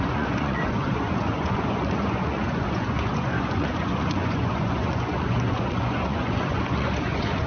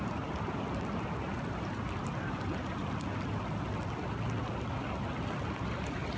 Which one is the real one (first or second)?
second